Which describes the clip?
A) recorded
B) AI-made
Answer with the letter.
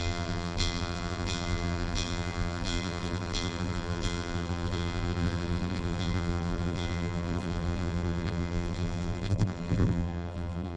B